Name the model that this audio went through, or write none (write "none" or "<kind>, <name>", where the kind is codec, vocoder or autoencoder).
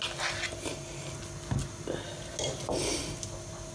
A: none